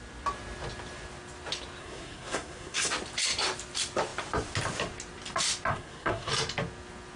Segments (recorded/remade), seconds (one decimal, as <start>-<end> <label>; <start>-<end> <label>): 0.0-1.8 recorded; 1.8-2.9 remade; 2.9-5.7 recorded; 5.7-6.3 remade; 6.3-7.2 recorded